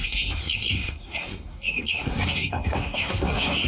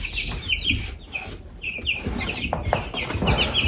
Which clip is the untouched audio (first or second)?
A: second